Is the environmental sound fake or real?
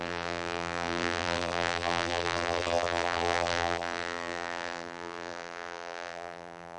fake